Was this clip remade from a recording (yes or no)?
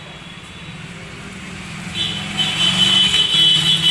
no